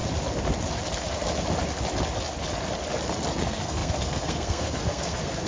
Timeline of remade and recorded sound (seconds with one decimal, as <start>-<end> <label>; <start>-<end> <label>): 0.0-3.3 recorded; 3.3-5.5 remade